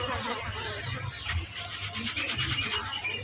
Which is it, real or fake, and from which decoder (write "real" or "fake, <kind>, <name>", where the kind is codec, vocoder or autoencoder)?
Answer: real